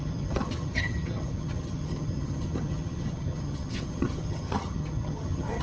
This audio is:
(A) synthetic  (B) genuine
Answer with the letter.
A